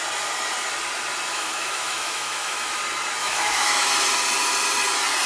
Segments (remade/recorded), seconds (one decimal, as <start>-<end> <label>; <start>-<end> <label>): 0.0-1.3 recorded; 1.3-2.8 remade; 2.8-3.2 recorded; 3.2-3.9 remade; 3.9-5.3 recorded